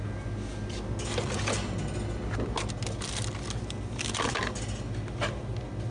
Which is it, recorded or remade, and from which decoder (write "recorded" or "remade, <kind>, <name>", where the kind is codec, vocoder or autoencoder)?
recorded